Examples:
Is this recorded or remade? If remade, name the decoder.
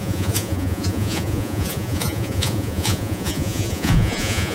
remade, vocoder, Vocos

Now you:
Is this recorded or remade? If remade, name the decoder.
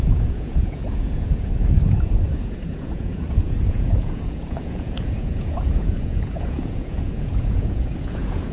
remade, vocoder, Vocos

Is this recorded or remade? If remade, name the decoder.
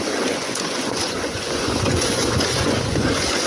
remade, vocoder, Vocos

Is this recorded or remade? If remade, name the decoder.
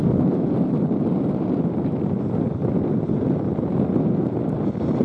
recorded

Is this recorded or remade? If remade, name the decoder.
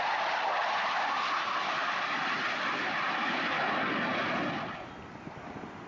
recorded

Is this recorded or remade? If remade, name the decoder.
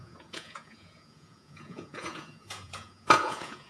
remade, vocoder, Vocos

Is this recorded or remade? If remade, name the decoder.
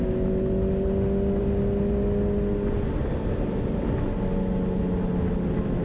recorded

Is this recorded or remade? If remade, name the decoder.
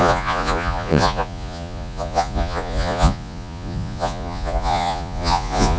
remade, vocoder, Vocos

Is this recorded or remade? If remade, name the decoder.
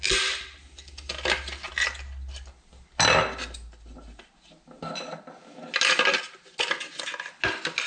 recorded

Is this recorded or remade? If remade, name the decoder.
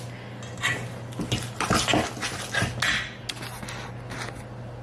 recorded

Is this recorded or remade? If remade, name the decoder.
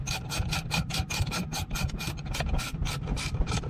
recorded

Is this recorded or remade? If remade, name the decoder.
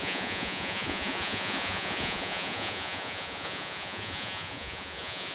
remade, vocoder, Vocos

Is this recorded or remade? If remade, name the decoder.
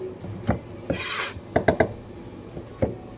recorded